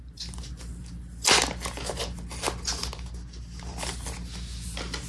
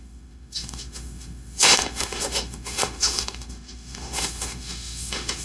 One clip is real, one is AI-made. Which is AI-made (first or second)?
second